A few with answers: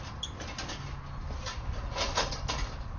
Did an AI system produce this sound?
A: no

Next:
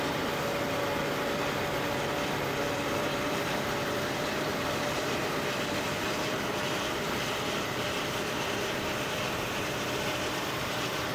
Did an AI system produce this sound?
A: yes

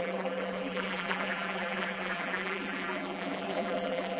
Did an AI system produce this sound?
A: yes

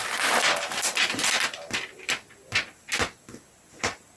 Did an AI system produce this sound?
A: no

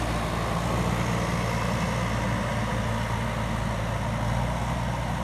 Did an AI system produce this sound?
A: no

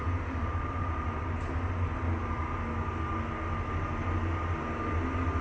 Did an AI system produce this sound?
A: no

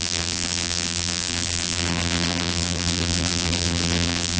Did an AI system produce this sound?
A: yes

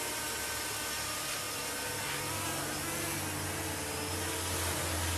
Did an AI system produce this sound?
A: no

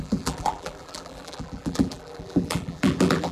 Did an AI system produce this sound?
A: yes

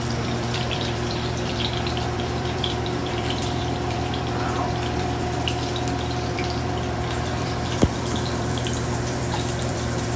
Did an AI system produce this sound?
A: yes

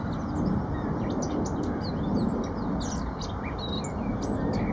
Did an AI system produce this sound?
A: no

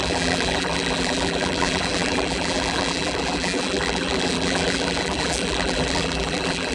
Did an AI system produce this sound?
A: yes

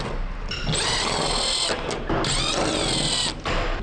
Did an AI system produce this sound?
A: no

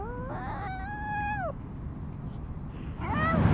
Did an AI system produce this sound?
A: no